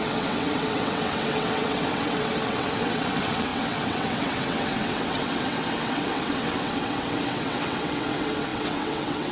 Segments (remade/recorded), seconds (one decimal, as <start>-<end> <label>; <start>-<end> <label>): 0.0-9.3 remade